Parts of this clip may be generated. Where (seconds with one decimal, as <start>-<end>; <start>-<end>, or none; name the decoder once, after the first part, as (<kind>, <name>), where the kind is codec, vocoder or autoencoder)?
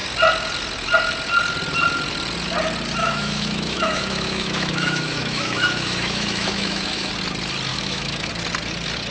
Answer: 3.0-7.1 (autoencoder, DAC-VAE); 7.7-8.3